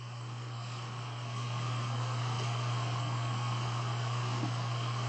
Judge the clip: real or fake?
fake